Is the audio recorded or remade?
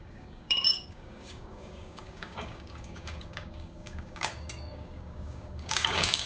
remade